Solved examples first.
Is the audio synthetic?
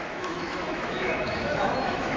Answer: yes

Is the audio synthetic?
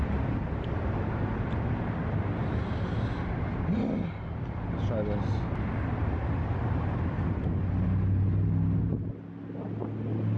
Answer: no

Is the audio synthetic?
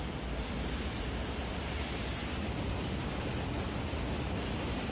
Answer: no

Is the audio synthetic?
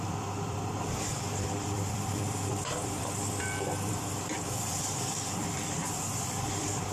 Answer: yes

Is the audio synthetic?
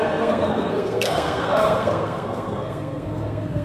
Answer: yes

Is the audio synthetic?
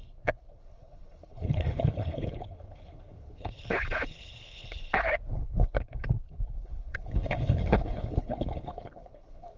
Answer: yes